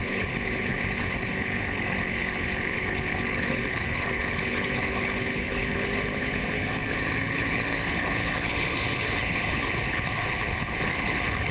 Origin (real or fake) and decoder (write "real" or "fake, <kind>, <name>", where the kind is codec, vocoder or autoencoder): fake, codec, HILCodec